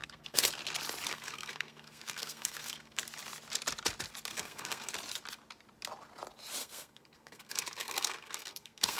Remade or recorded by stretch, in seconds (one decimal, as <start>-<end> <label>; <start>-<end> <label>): 0.0-0.5 remade; 0.5-1.1 recorded; 1.1-3.0 remade; 3.0-4.3 recorded; 4.3-4.9 remade; 4.9-6.6 recorded; 6.6-9.0 remade